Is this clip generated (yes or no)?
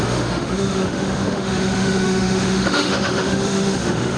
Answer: yes